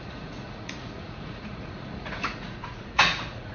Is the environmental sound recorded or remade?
remade